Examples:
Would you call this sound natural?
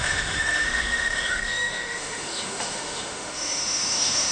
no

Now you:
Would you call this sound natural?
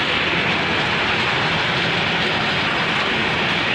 yes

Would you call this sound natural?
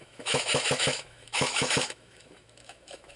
no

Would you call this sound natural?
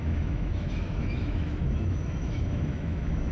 no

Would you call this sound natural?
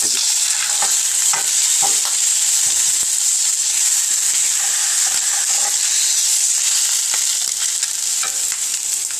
yes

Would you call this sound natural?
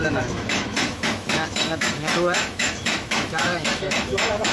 no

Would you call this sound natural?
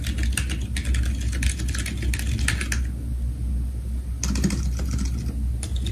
yes